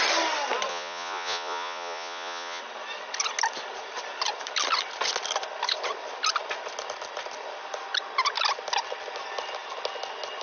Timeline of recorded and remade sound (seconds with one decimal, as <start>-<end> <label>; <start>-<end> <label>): 0.0-0.7 recorded; 0.7-2.6 remade; 2.6-10.4 recorded